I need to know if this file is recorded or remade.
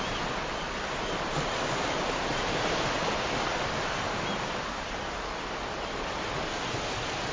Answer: recorded